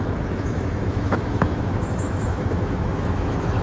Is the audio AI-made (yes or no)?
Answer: yes